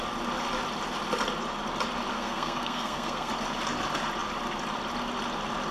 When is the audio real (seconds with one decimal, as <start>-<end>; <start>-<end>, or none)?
0.0-2.1; 3.3-5.7